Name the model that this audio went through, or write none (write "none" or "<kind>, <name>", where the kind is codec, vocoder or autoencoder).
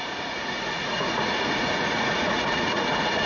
vocoder, Vocos